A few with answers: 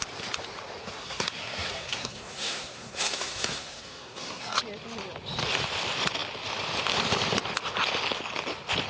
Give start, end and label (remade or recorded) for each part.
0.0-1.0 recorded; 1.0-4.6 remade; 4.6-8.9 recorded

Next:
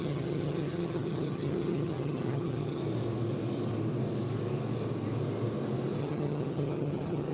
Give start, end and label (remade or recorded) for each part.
0.0-2.8 remade; 2.8-6.0 recorded; 6.0-7.3 remade

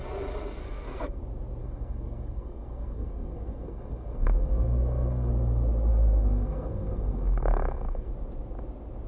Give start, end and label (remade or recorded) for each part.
0.0-0.6 recorded; 0.6-1.2 remade; 1.2-1.6 recorded; 1.6-5.3 remade; 5.3-5.9 recorded; 5.9-8.1 remade; 8.1-9.1 recorded

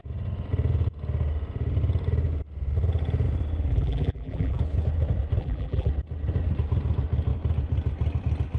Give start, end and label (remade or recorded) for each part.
0.0-3.7 recorded; 3.7-4.6 remade; 4.6-5.4 recorded; 5.4-5.9 remade; 5.9-8.6 recorded

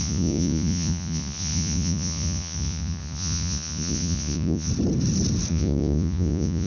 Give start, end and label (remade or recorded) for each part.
0.0-4.7 remade; 4.7-5.5 recorded; 5.5-6.7 remade